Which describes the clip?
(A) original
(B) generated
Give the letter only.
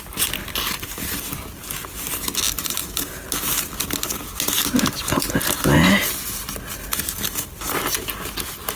A